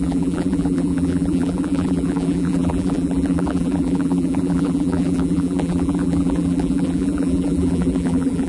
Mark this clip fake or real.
fake